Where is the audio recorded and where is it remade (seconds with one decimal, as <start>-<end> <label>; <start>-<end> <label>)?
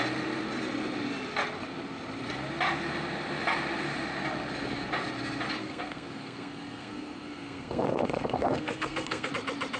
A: 0.0-5.6 recorded; 5.6-9.3 remade; 9.3-9.8 recorded